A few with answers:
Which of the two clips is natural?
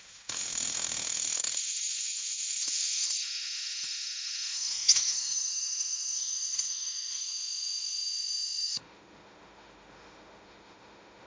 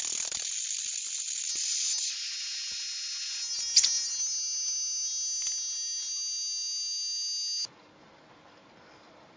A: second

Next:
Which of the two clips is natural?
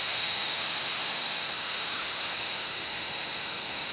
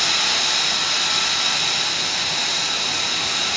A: second